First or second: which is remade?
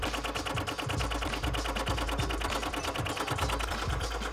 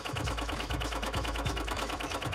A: second